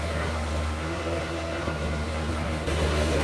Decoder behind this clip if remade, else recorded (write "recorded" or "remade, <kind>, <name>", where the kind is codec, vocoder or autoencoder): remade, codec, SNAC